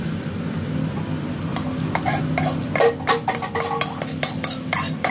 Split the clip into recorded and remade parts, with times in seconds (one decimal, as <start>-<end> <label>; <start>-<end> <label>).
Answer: 0.0-5.1 recorded